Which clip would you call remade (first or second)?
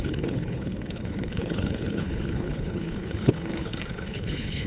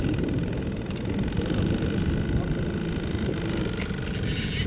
first